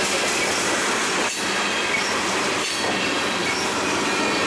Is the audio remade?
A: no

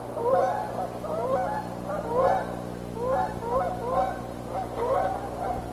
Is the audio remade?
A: no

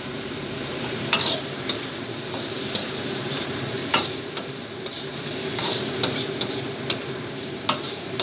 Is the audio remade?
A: yes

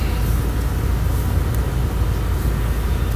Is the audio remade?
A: no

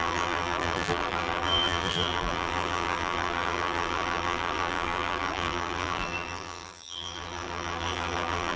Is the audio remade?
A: yes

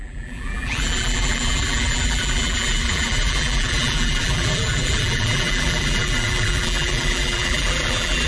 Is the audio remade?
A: yes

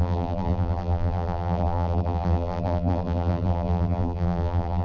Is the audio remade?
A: yes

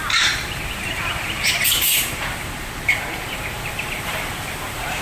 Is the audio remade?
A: yes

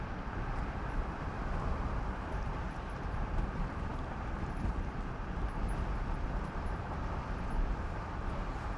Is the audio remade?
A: yes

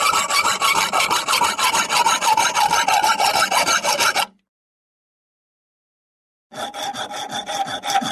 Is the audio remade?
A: no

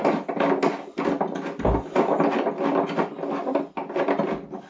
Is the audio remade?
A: no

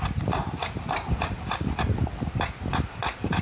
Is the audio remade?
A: yes